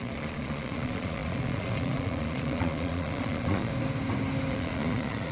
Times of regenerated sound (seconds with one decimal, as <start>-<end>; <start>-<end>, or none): 0.0-3.7; 4.5-5.3